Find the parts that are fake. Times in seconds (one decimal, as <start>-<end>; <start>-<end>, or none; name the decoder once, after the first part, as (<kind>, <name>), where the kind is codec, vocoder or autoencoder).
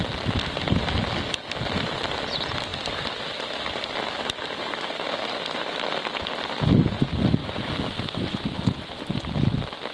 none